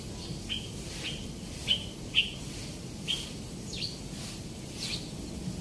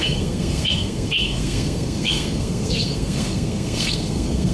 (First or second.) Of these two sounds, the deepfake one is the second